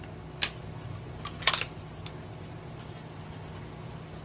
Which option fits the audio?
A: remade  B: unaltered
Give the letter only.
B